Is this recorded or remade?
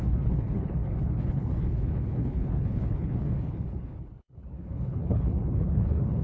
remade